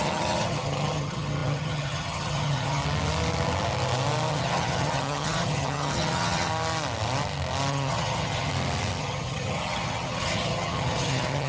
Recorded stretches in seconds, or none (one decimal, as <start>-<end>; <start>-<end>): 2.8-4.3; 6.5-7.7; 8.5-9.0